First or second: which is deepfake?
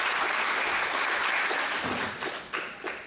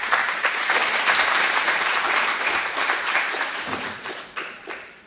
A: second